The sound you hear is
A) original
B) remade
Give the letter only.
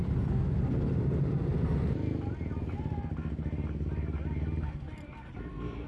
A